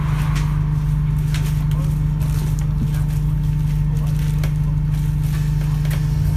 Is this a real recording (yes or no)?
yes